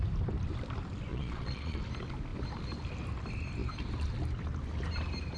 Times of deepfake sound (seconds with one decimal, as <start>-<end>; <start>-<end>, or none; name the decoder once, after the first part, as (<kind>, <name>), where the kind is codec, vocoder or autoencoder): 1.1-1.8 (vocoder, Vocos)